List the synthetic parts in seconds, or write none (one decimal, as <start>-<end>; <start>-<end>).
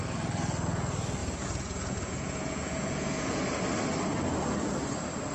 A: 1.2-3.4